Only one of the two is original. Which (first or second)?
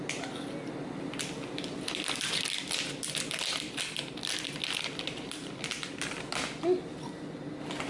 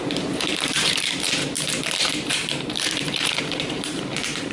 first